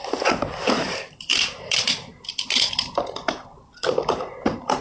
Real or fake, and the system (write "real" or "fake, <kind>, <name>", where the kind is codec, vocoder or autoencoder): fake, vocoder, BigVGAN v2